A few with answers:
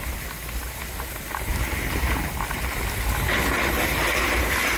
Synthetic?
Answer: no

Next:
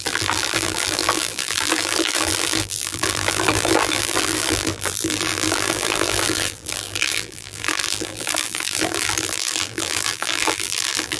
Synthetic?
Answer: yes